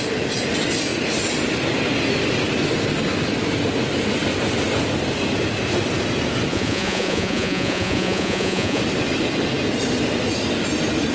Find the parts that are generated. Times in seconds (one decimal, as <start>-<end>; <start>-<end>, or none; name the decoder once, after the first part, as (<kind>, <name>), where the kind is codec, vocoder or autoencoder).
6.5-8.8 (vocoder, Vocos)